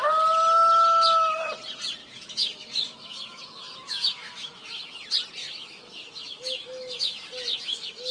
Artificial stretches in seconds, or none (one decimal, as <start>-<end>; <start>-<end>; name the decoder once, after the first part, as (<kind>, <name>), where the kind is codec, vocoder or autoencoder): 2.0-5.0 (autoencoder, DAC-VAE); 5.4-8.1